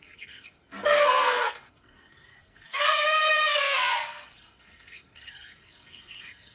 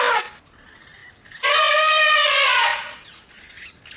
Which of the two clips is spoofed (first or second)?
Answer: first